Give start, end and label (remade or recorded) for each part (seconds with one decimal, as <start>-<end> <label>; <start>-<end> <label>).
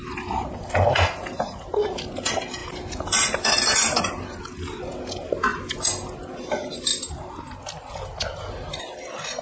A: 0.0-9.4 recorded